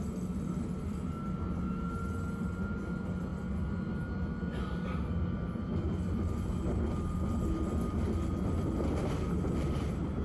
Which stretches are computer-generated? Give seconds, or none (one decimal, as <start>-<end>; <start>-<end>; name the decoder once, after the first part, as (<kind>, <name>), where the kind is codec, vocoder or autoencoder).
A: none